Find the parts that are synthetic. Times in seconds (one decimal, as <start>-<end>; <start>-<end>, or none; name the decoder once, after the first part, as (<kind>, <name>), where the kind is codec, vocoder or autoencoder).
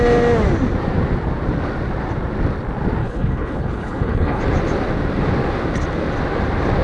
3.0-4.4 (codec, HILCodec)